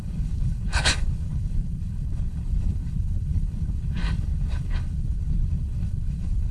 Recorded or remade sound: remade